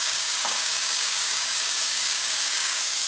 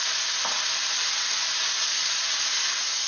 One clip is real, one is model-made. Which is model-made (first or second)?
first